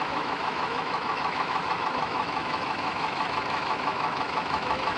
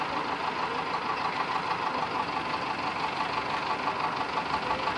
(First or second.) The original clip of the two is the second